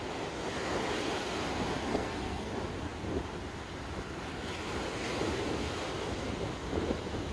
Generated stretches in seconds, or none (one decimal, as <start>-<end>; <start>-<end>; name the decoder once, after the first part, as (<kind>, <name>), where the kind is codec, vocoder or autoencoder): 1.9-2.5 (codec, SNAC)